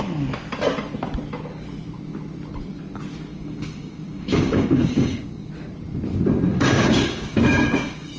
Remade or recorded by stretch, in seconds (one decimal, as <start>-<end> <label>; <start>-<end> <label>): 0.0-3.3 recorded; 3.3-5.5 remade; 5.5-6.5 recorded; 6.5-8.2 remade